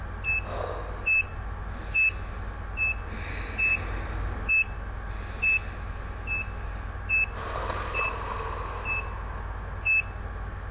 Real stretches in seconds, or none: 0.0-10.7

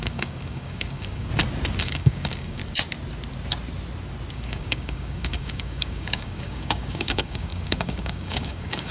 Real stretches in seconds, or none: 1.3-1.8; 2.6-4.3

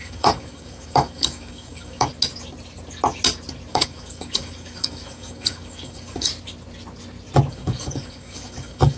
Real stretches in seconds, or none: 2.1-3.7; 6.3-7.5

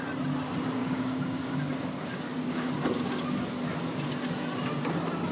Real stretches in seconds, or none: 0.0-0.8; 2.7-5.3

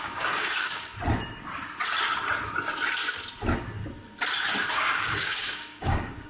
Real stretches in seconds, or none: 0.9-4.7